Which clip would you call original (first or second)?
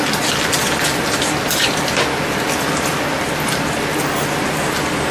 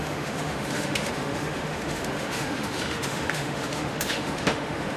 first